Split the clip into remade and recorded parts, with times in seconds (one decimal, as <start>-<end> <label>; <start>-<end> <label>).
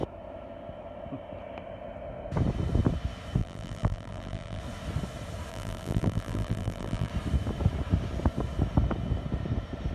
0.0-3.4 recorded; 3.4-4.6 remade; 4.6-5.5 recorded; 5.5-7.1 remade; 7.1-9.9 recorded